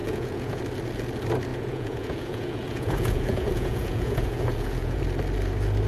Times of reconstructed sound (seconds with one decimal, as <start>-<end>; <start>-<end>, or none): 0.0-0.6; 1.5-5.0